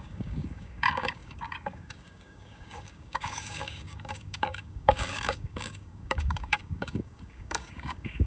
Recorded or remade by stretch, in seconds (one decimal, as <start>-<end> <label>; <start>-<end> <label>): 0.0-8.3 remade